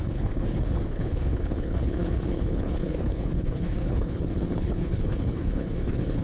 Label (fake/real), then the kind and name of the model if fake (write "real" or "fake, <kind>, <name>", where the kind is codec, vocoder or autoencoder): fake, codec, HILCodec